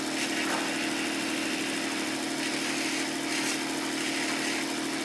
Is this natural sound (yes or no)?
yes